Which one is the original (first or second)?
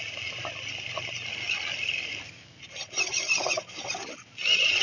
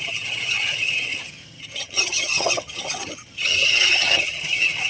first